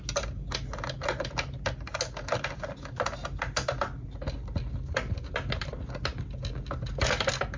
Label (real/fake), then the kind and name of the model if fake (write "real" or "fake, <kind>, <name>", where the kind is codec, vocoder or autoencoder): real